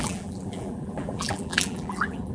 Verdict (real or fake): fake